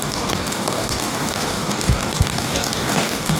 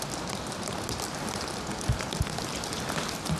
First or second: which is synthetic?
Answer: first